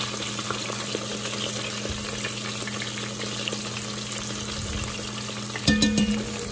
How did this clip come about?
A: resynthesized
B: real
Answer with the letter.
B